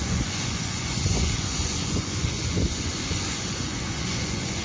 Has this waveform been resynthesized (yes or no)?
yes